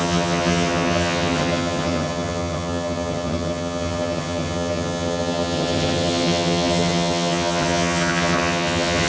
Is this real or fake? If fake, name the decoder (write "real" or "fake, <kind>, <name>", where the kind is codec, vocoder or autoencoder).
fake, vocoder, HiFi-GAN